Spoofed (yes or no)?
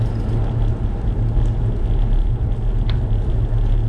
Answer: no